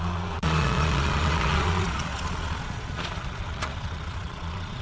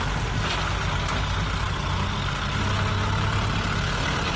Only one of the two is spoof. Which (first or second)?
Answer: first